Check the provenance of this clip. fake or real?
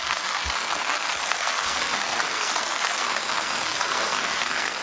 fake